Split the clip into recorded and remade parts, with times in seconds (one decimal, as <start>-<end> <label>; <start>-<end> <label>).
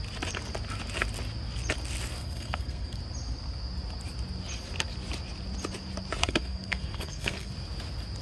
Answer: 0.0-2.2 recorded; 2.2-3.0 remade; 3.0-6.2 recorded; 6.2-7.5 remade; 7.5-8.2 recorded